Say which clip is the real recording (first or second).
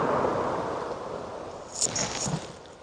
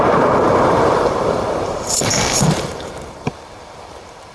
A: first